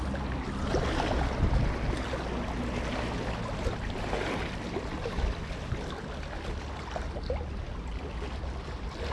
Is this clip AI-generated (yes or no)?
no